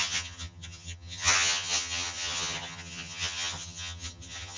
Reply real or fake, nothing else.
fake